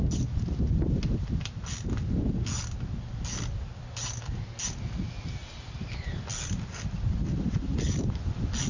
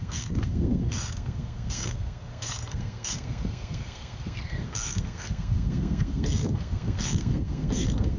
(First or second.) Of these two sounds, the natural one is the first